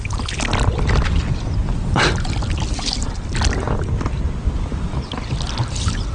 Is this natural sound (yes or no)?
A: yes